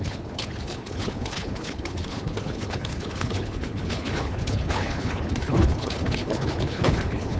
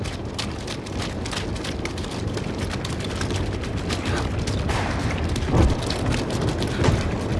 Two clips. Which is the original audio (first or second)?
second